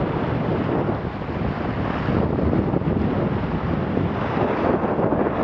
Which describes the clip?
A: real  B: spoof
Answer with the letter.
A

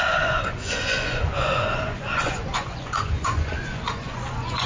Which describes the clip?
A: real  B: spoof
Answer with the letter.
B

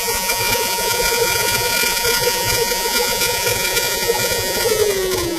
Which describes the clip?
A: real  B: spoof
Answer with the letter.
B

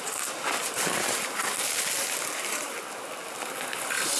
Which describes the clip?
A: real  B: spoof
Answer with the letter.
A